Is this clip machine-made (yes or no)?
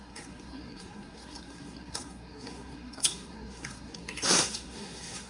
yes